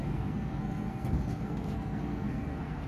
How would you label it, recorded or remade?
remade